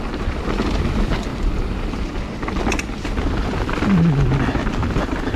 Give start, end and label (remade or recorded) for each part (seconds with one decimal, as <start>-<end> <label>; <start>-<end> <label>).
0.0-1.3 recorded; 1.3-2.1 remade; 2.1-4.8 recorded; 4.8-5.4 remade